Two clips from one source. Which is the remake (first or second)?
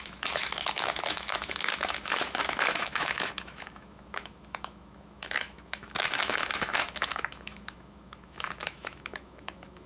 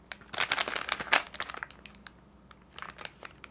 first